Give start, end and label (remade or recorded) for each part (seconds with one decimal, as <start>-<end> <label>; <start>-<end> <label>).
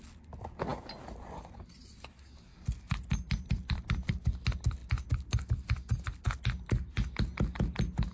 0.0-0.7 recorded; 0.7-1.8 remade; 1.8-2.5 recorded; 2.5-4.1 remade; 4.1-8.1 recorded